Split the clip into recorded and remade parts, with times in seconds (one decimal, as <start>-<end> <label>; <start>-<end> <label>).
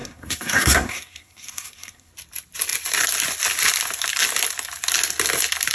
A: 0.0-2.1 remade; 2.1-5.7 recorded